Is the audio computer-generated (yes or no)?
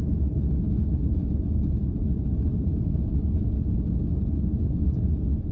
no